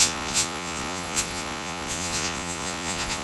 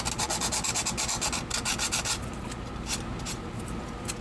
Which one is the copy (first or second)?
first